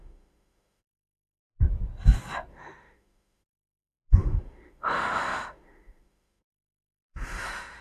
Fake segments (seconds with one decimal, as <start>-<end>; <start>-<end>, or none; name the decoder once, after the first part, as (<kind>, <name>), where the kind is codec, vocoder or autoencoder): 0.0-1.4 (autoencoder, DAC-VAE); 2.5-7.8